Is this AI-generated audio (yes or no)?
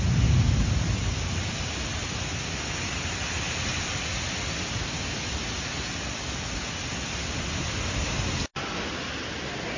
no